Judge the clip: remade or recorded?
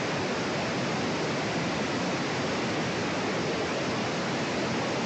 recorded